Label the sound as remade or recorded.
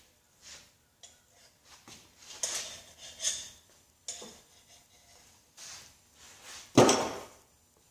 recorded